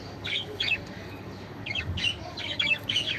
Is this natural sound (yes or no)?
no